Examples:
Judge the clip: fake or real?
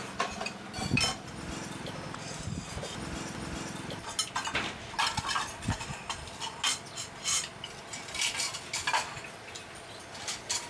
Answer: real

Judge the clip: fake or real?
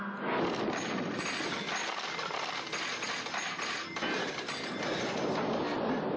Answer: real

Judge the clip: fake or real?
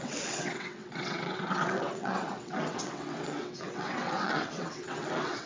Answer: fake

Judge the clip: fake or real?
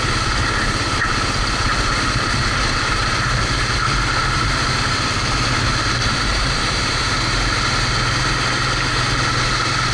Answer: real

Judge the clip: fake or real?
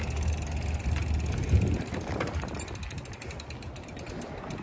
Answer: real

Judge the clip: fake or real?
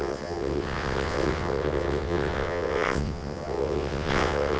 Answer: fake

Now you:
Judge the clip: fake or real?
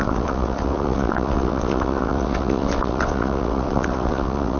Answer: fake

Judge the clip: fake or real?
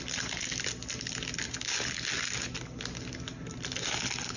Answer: real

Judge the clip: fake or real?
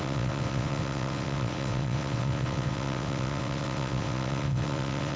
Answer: fake